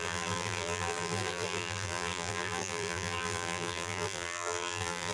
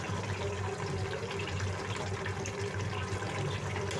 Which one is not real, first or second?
first